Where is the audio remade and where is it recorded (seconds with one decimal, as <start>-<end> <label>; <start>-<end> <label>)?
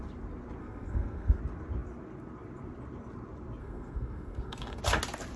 0.0-0.6 recorded; 0.6-1.4 remade; 1.4-3.6 recorded; 3.6-4.8 remade; 4.8-5.4 recorded